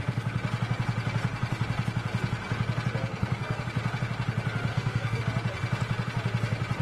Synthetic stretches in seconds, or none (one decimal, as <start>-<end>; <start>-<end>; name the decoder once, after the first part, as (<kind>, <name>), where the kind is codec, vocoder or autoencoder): 3.1-3.6 (codec, SNAC); 4.7-5.2

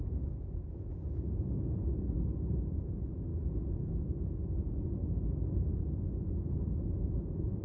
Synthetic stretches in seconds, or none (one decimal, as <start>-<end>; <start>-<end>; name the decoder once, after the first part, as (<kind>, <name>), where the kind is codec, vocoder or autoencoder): 0.0-5.0 (vocoder, Vocos); 5.7-7.6

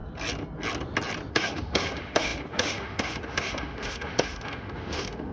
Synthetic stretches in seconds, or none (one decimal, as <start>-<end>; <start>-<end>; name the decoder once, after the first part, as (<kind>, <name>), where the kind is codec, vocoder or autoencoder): 1.3-5.3 (autoencoder, DAC-VAE)

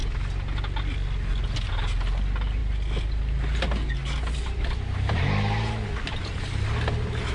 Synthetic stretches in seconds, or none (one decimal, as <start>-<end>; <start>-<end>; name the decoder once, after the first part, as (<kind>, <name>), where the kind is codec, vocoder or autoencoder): none

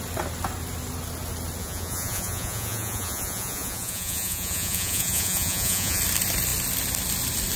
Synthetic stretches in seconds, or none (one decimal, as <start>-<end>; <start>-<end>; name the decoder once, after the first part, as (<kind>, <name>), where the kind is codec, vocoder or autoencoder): 1.6-6.0 (vocoder, Vocos)

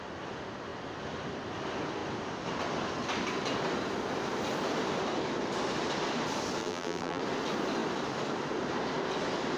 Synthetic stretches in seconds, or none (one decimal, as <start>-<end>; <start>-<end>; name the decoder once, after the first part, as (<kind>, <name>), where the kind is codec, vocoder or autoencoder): 6.6-7.2 (vocoder, BigVGAN v2)

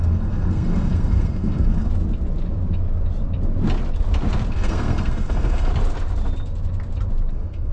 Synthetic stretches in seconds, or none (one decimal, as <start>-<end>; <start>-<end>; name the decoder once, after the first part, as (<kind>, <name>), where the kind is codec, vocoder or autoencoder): 0.0-1.9 (codec, SNAC); 4.5-5.7; 7.3-7.7

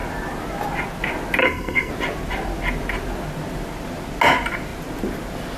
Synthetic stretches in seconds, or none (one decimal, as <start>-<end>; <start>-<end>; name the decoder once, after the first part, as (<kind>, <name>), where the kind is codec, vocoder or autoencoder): 1.4-1.9 (codec, SNAC)